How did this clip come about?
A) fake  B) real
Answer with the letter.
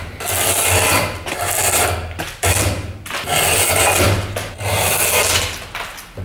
B